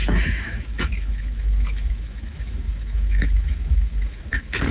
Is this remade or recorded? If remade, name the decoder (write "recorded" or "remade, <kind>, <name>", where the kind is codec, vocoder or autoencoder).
remade, autoencoder, DAC-VAE